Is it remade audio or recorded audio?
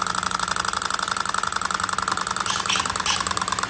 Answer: recorded